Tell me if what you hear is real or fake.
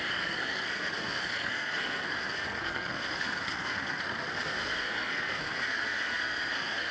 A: fake